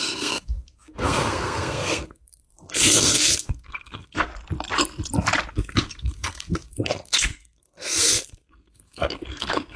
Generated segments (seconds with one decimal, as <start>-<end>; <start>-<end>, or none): 0.0-4.3; 5.5-9.8